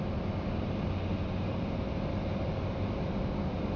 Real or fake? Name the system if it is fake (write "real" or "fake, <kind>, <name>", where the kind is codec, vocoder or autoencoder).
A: real